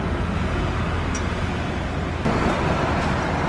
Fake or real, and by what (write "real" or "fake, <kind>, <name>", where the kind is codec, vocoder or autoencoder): real